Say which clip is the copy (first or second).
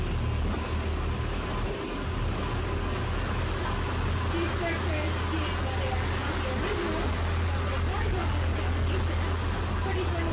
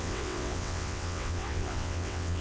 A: second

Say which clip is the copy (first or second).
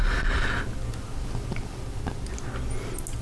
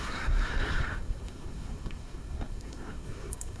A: second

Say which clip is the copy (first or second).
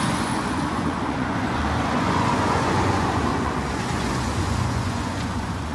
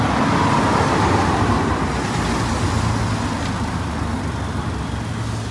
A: first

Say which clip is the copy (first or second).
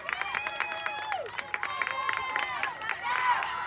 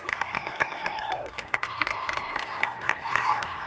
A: second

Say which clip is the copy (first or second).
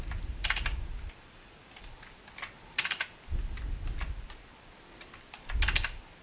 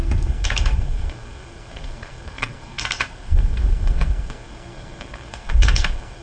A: second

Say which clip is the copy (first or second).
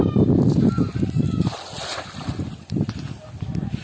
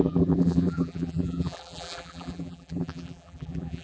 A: second